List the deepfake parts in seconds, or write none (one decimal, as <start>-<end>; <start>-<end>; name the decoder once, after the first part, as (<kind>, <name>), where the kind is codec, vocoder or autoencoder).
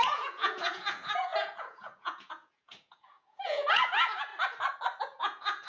0.0-4.3 (vocoder, Vocos); 5.0-5.7